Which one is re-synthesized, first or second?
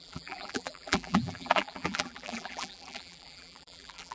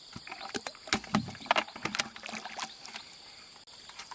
first